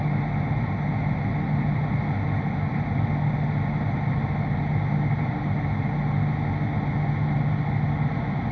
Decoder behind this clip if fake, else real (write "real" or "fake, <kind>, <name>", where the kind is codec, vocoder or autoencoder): real